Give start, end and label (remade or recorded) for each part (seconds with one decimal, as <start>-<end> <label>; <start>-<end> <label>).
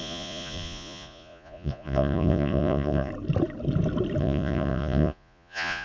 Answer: 0.0-3.1 remade; 3.1-4.2 recorded; 4.2-5.8 remade